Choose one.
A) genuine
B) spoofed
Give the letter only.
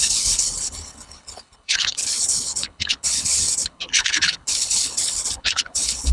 B